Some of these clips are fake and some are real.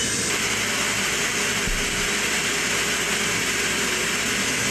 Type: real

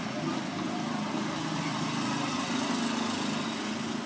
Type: real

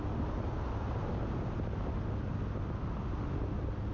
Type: real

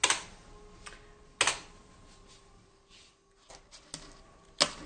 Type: real